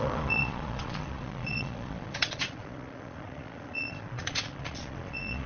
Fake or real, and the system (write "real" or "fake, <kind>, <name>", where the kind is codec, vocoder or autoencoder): fake, vocoder, Vocos